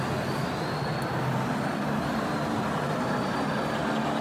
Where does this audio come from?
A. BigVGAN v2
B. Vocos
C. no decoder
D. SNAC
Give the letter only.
C